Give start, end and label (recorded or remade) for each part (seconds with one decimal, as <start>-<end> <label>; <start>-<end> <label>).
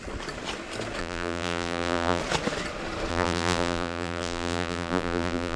0.0-1.0 recorded; 1.0-2.2 remade; 2.2-3.1 recorded; 3.1-5.6 remade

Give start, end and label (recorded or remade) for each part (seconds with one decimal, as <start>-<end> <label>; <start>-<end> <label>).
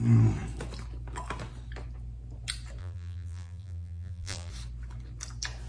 0.0-2.8 recorded; 2.8-4.5 remade; 4.5-5.7 recorded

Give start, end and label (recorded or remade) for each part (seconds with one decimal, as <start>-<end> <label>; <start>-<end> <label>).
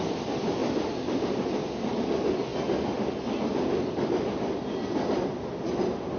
0.0-6.2 recorded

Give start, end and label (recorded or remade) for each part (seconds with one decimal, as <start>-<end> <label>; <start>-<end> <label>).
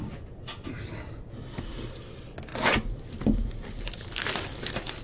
0.0-5.0 recorded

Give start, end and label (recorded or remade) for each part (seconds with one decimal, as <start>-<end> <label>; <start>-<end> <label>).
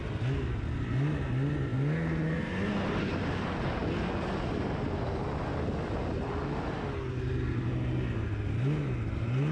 0.0-9.5 recorded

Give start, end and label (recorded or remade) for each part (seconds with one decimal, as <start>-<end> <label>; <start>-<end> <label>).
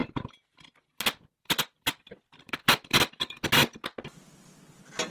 0.0-3.1 remade; 3.1-5.1 recorded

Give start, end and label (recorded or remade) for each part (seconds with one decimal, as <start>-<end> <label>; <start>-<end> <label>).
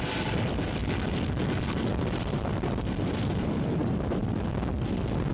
0.0-0.8 remade; 0.8-1.6 recorded; 1.6-4.2 remade; 4.2-5.3 recorded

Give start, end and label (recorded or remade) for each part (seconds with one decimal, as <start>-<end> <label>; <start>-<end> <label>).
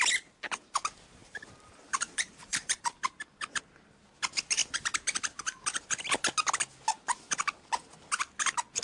0.0-1.2 recorded; 1.2-3.0 remade; 3.0-8.8 recorded